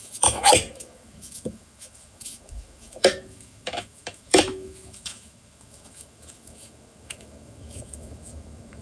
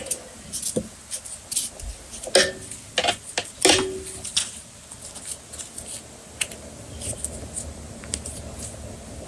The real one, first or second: second